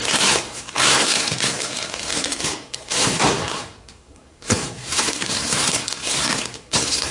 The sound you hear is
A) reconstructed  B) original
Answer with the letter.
A